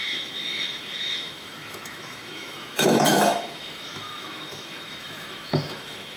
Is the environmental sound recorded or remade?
remade